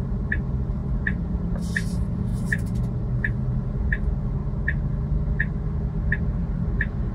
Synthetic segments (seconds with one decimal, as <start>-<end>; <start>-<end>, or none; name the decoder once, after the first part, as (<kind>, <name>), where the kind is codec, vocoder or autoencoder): 0.0-4.4 (vocoder, BigVGAN v2); 6.2-7.1